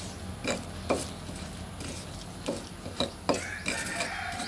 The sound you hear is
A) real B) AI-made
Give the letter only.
A